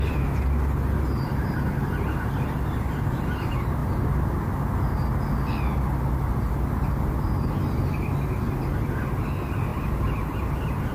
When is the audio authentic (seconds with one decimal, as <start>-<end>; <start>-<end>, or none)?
0.0-10.9